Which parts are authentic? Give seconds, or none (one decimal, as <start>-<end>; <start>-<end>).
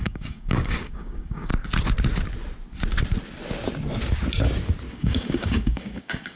1.5-4.9